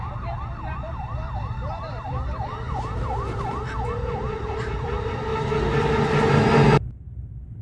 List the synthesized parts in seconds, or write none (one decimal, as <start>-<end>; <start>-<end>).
0.0-7.6

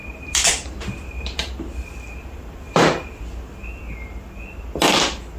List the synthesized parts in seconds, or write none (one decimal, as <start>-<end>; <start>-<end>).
none

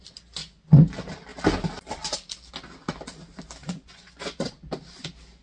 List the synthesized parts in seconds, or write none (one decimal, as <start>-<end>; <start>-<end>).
0.4-0.9; 3.6-4.5

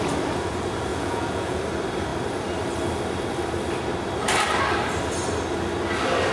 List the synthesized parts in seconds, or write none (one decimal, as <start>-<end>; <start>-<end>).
0.9-1.6

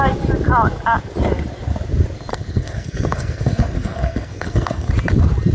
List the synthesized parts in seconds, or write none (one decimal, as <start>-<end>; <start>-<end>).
2.3-4.9

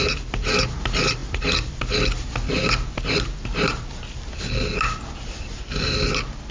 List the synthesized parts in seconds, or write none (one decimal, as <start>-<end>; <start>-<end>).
none